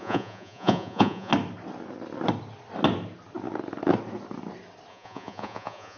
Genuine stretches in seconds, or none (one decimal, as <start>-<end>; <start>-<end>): 1.3-4.9